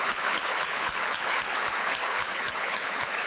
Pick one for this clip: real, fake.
fake